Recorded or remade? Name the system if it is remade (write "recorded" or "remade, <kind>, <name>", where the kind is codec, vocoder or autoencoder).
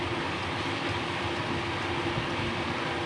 recorded